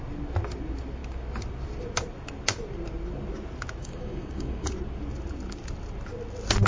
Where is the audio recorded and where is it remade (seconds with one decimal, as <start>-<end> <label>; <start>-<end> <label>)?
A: 0.0-3.8 recorded; 3.8-4.7 remade; 4.7-6.7 recorded